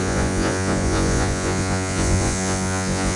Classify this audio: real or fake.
fake